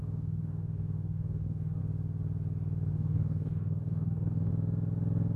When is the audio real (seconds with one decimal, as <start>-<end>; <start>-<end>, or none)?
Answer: 1.8-2.9; 4.5-5.4

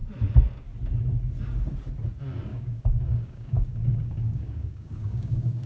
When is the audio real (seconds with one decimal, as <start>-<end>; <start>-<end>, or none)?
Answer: 0.0-2.5

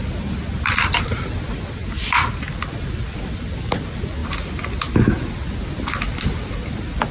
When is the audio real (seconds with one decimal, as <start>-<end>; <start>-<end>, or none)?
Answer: 0.0-7.1